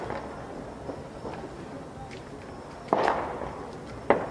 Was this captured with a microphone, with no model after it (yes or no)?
yes